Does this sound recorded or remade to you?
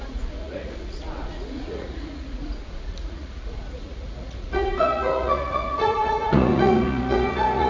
remade